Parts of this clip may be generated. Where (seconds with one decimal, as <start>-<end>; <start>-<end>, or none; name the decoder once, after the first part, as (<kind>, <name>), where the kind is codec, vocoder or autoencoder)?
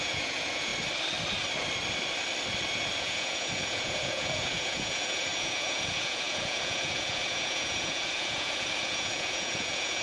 0.0-0.7 (vocoder, Vocos); 3.0-10.0